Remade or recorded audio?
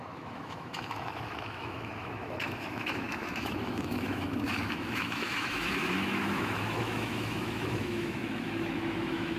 remade